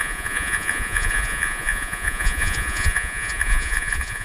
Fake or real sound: fake